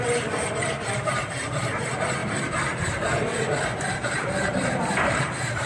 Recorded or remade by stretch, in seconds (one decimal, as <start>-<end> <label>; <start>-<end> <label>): 0.0-5.7 remade